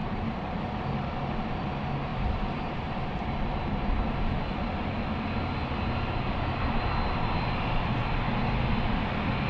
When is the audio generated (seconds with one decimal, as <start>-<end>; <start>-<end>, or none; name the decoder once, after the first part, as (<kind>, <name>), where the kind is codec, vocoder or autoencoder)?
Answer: 0.0-0.7 (vocoder, BigVGAN v2); 2.1-3.3